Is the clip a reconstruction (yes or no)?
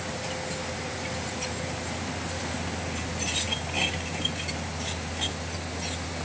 no